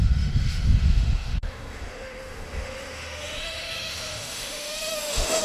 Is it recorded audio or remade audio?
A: remade